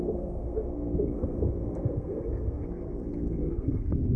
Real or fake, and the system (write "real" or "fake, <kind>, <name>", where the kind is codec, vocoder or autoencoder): fake, codec, SNAC